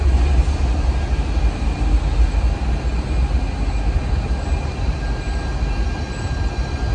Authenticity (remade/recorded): recorded